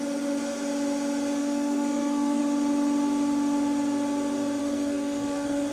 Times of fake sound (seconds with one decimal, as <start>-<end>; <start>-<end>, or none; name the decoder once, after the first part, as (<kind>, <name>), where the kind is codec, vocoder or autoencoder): 1.4-2.4 (codec, SNAC); 4.6-5.7